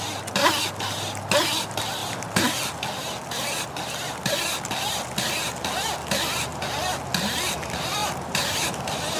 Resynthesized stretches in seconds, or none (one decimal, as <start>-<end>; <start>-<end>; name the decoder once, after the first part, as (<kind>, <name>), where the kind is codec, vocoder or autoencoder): none